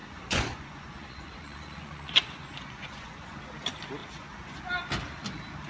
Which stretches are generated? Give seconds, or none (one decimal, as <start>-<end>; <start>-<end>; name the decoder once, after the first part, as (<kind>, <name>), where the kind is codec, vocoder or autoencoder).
0.0-3.4 (vocoder, Vocos); 4.0-4.6

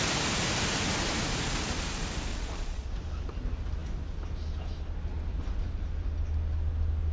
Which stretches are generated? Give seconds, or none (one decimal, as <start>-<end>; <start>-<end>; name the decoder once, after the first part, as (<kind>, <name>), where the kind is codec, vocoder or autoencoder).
2.3-2.9 (vocoder, Vocos)

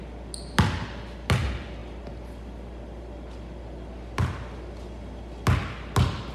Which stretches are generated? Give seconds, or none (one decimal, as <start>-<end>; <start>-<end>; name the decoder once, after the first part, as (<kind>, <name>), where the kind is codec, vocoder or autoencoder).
none

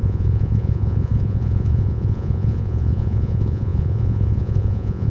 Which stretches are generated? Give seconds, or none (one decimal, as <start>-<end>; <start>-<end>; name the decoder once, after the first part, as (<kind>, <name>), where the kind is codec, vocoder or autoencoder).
0.0-5.1 (vocoder, Vocos)

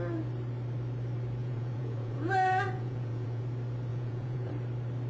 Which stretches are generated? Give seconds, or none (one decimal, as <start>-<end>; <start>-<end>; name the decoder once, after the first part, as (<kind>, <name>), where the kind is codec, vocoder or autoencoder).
1.4-3.4 (vocoder, Vocos); 3.9-4.5

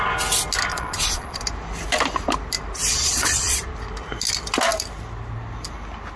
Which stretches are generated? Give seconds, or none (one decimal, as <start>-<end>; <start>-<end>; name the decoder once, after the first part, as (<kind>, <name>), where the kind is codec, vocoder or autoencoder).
0.7-1.4 (vocoder, Vocos); 2.9-3.6

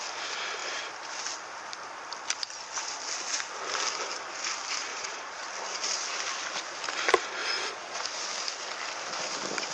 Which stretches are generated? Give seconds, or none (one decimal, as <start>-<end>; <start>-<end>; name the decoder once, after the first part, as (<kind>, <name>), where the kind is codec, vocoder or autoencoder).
4.9-5.4 (vocoder, Vocos); 7.4-8.0